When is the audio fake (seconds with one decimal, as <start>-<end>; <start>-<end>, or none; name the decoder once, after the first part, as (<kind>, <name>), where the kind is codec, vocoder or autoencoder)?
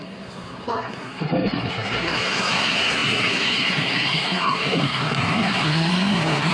0.0-6.5 (codec, SNAC)